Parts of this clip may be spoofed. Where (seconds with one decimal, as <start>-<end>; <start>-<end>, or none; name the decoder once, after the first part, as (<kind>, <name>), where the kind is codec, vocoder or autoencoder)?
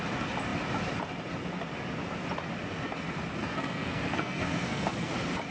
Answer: 3.4-5.1 (codec, SNAC)